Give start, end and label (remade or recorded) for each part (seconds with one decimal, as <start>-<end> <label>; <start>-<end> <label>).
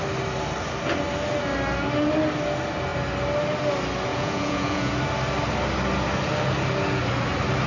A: 0.0-4.1 recorded; 4.1-4.9 remade; 4.9-7.7 recorded